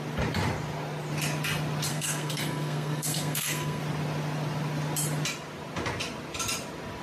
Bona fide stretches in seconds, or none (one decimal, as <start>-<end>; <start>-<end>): 0.0-1.9; 3.8-7.0